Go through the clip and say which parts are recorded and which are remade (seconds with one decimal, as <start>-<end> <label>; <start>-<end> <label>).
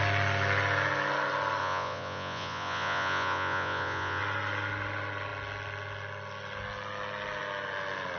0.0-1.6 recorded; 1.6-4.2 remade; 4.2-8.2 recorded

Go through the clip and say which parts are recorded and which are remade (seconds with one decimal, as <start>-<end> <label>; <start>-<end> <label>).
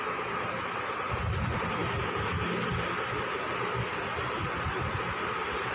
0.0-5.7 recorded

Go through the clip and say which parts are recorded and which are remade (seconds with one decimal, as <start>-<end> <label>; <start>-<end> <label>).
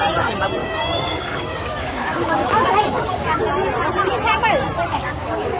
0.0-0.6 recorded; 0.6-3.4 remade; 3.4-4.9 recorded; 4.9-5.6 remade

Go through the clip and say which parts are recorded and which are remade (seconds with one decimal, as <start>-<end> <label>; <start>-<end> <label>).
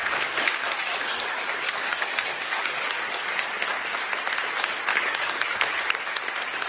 0.0-3.6 remade; 3.6-4.9 recorded; 4.9-5.6 remade; 5.6-6.7 recorded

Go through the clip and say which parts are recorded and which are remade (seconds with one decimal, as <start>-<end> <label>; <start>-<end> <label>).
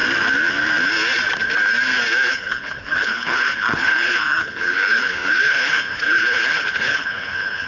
0.0-2.3 recorded; 2.3-7.7 remade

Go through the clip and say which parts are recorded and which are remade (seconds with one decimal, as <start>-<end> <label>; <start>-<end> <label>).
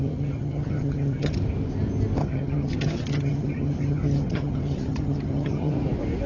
0.0-1.3 remade; 1.3-2.2 recorded; 2.2-5.7 remade; 5.7-6.3 recorded